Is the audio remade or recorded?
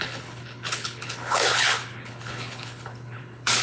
remade